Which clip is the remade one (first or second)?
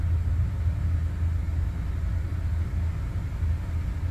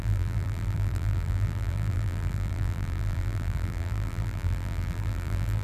second